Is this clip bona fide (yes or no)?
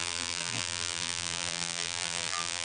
no